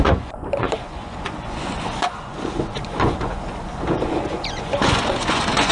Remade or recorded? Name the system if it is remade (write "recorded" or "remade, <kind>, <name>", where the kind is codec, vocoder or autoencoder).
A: remade, vocoder, Vocos